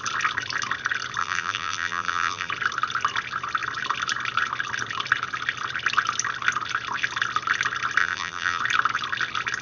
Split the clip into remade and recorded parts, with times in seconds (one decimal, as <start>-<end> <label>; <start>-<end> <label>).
0.0-1.2 recorded; 1.2-2.5 remade; 2.5-8.0 recorded; 8.0-8.6 remade; 8.6-9.6 recorded